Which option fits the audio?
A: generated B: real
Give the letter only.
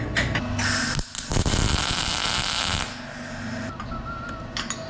B